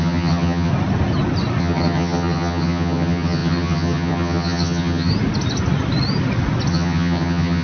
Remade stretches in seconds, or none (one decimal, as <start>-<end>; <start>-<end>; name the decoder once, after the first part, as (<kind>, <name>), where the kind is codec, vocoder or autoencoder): 0.0-0.7 (vocoder, HiFi-GAN); 1.6-5.1; 6.7-7.6

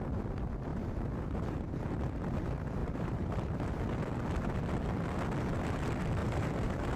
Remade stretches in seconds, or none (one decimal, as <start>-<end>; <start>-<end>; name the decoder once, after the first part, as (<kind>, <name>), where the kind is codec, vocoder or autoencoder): 0.7-2.0 (vocoder, BigVGAN v2); 2.8-3.5; 6.2-7.0

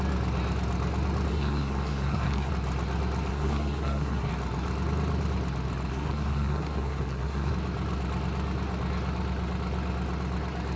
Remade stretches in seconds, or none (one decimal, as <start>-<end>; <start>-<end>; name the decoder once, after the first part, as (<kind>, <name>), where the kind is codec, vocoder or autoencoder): 1.3-2.5 (codec, SNAC); 3.3-4.3; 5.9-7.5

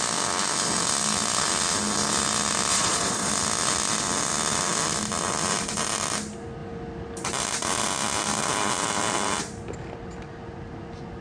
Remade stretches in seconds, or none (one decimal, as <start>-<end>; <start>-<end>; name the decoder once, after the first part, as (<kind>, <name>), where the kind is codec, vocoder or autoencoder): 2.7-3.3 (vocoder, Vocos)

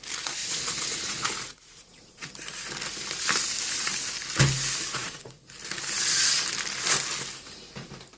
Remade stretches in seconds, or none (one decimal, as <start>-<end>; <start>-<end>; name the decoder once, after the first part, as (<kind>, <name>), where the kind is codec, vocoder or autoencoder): 0.4-2.3 (vocoder, Vocos); 4.9-5.4

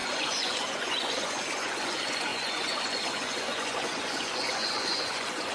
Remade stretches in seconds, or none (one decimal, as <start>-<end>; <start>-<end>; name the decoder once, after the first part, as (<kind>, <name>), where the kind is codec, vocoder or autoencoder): 0.0-5.5 (vocoder, Vocos)

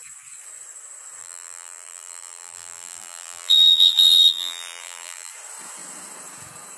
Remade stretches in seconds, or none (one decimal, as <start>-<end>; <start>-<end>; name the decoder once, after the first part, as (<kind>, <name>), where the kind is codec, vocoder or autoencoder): 1.2-5.3 (vocoder, BigVGAN v2)

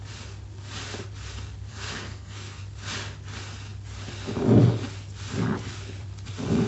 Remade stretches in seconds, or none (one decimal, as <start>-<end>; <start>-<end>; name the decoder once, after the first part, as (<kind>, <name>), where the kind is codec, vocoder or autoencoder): 1.7-2.6 (codec, SNAC)